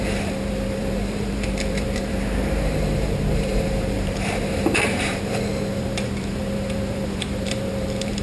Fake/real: fake